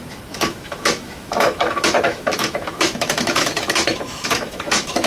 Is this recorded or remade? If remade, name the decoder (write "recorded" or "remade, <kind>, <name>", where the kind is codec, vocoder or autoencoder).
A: remade, autoencoder, DAC-VAE